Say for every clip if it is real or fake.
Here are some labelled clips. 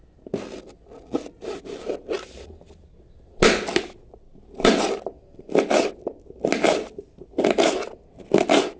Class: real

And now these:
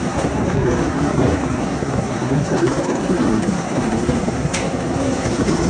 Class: fake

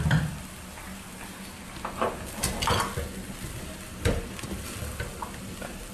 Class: real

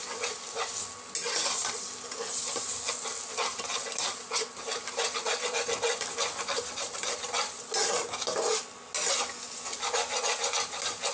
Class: real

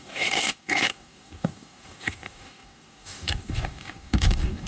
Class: fake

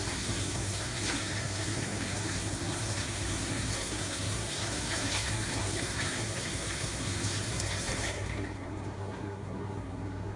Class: fake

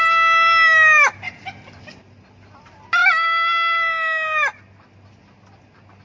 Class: real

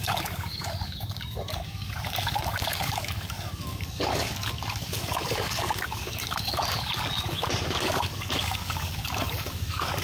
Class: fake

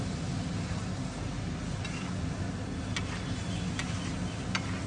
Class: real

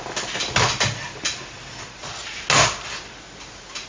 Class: real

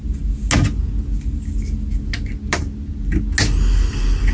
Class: real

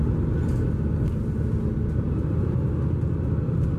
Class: real